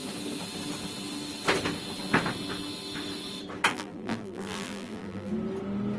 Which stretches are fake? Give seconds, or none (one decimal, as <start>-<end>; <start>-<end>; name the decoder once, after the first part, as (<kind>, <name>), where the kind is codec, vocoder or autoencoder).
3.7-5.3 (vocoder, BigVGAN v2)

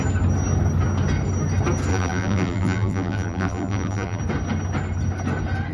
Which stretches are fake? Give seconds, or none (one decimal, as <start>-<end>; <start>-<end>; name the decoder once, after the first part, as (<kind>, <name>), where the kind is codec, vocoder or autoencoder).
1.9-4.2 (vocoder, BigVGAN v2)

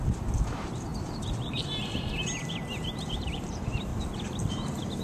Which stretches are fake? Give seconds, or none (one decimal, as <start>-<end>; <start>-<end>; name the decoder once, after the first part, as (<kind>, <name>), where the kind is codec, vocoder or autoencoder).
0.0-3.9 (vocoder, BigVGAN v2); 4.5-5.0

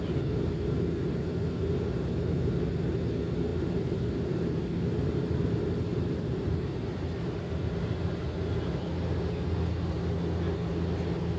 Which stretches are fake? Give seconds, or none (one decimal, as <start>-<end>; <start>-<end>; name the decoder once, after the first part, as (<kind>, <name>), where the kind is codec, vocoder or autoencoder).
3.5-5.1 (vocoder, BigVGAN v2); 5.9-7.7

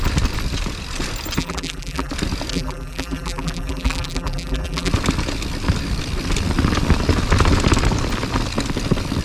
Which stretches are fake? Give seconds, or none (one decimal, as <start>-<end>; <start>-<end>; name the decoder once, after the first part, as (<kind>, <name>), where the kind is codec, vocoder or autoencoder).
1.4-2.1 (vocoder, BigVGAN v2); 2.5-4.9

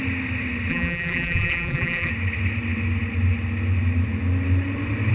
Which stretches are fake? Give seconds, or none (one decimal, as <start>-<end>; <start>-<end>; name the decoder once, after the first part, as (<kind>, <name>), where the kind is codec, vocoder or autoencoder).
0.7-2.1 (vocoder, BigVGAN v2)

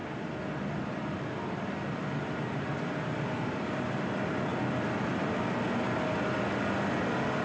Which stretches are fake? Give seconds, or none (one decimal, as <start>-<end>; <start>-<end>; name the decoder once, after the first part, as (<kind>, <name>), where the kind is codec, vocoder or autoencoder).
none